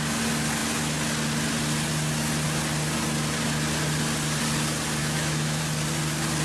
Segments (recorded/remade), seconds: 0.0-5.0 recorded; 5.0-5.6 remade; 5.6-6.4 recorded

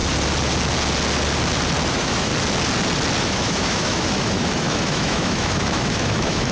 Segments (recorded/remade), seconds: 0.0-1.9 recorded; 1.9-2.3 remade; 2.3-3.2 recorded; 3.2-6.5 remade

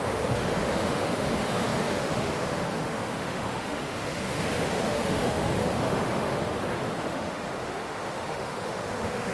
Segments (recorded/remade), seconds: 0.0-9.3 remade

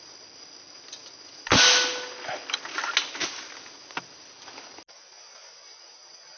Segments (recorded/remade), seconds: 0.0-6.4 recorded

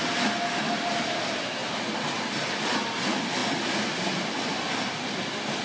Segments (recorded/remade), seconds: 0.0-5.6 recorded

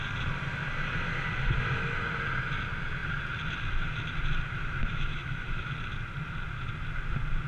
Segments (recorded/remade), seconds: 0.0-4.8 recorded; 4.8-5.7 remade; 5.7-7.5 recorded

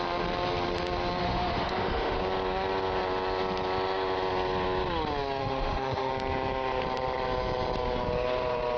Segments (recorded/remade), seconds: 0.0-1.2 recorded; 1.2-2.2 remade; 2.2-5.4 recorded; 5.4-6.1 remade; 6.1-8.8 recorded

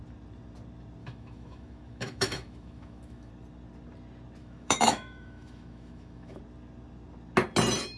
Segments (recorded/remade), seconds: 0.0-1.0 recorded; 1.0-3.3 remade; 3.3-4.4 recorded; 4.4-6.4 remade; 6.4-8.0 recorded